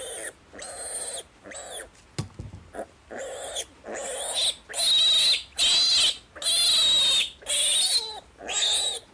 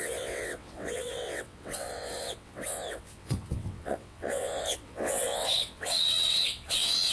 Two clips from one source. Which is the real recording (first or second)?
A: first